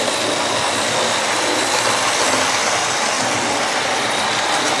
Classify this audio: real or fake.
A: real